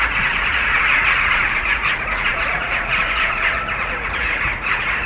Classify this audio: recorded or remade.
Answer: remade